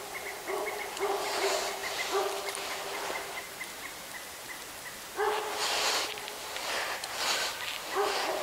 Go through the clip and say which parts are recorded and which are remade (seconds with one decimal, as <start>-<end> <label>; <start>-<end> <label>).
0.0-8.4 recorded

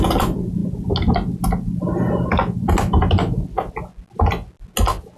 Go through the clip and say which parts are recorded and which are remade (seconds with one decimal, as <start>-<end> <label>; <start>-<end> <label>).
0.0-5.2 recorded

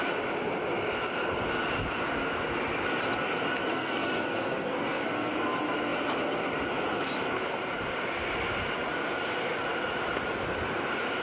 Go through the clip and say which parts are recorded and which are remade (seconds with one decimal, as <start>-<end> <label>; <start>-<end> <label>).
0.0-3.7 recorded; 3.7-5.3 remade; 5.3-11.2 recorded

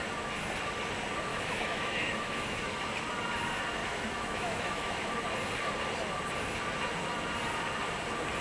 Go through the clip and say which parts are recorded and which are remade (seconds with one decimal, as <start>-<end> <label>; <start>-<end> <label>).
0.0-1.3 recorded; 1.3-2.7 remade; 2.7-3.8 recorded; 3.8-5.1 remade; 5.1-8.4 recorded

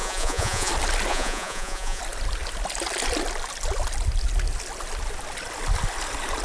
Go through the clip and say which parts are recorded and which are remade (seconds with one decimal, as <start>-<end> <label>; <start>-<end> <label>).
0.0-0.7 remade; 0.7-1.1 recorded; 1.1-2.0 remade; 2.0-6.4 recorded

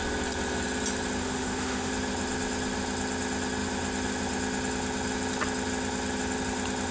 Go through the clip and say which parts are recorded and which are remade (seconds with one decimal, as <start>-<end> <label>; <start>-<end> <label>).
0.0-1.2 recorded; 1.2-1.9 remade; 1.9-6.9 recorded

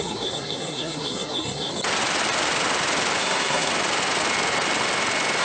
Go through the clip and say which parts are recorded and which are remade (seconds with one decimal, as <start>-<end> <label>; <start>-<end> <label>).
0.0-1.7 remade; 1.7-3.2 recorded; 3.2-3.7 remade; 3.7-5.4 recorded

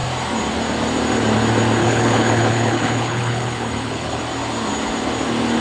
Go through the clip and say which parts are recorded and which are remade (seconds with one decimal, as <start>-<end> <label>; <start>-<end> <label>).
0.0-1.8 recorded; 1.8-4.2 remade; 4.2-5.6 recorded